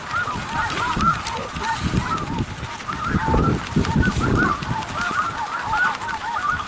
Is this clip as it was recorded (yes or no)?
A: yes